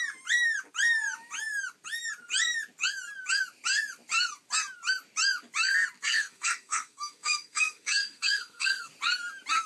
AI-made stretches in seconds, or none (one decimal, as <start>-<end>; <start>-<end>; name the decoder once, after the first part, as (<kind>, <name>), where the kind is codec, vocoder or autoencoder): 6.0-8.9 (codec, SNAC)